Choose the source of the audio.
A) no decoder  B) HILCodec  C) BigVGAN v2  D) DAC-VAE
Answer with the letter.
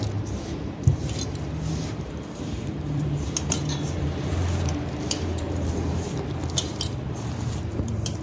C